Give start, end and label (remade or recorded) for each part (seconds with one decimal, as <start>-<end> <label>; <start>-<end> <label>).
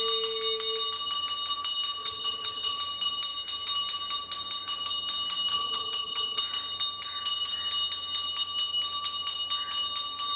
0.0-2.0 recorded; 2.0-2.8 remade; 2.8-5.5 recorded; 5.5-6.4 remade; 6.4-10.4 recorded